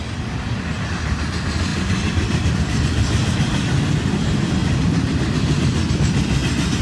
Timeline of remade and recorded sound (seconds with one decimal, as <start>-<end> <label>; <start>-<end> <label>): 0.0-6.8 recorded